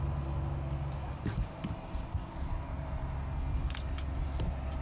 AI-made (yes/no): no